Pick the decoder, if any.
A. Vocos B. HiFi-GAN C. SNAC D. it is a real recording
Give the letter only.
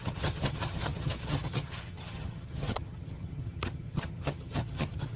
B